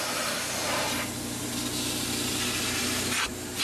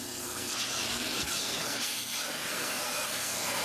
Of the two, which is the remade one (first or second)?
second